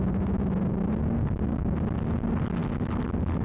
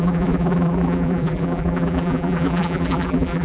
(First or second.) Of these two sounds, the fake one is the second